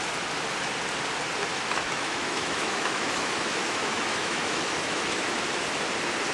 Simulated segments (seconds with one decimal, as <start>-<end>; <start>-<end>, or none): 1.5-5.3